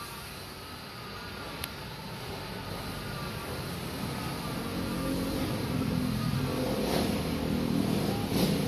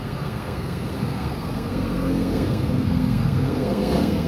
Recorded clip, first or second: first